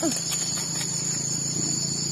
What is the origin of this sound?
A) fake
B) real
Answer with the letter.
B